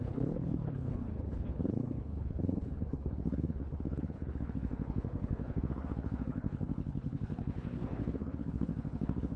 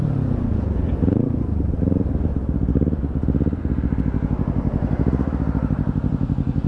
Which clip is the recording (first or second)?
second